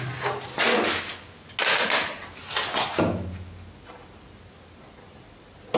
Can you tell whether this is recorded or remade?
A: recorded